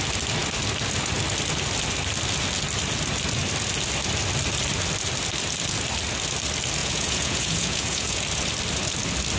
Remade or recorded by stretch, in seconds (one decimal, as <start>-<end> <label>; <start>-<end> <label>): 0.0-6.8 recorded; 6.8-8.2 remade; 8.2-9.4 recorded

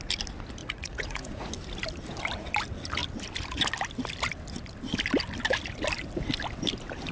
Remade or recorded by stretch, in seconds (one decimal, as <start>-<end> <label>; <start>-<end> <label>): 0.0-0.6 recorded; 0.6-1.5 remade; 1.5-7.1 recorded

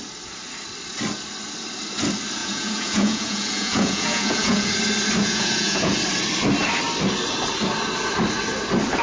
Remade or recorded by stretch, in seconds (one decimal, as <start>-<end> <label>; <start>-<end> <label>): 0.0-2.4 recorded; 2.4-4.7 remade; 4.7-5.2 recorded; 5.2-5.9 remade; 5.9-9.0 recorded

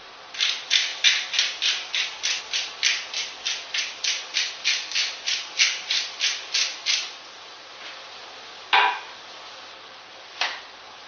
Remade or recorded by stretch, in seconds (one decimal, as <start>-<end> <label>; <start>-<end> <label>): 0.0-7.0 recorded; 7.0-7.7 remade; 7.7-11.1 recorded

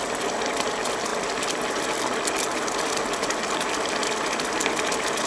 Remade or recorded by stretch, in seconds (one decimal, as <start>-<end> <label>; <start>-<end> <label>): 0.0-5.3 recorded

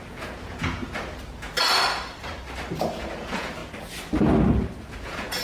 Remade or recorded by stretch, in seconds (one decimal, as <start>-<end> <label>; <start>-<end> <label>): 0.0-0.8 remade; 0.8-2.8 recorded; 2.8-3.6 remade; 3.6-4.8 recorded; 4.8-5.4 remade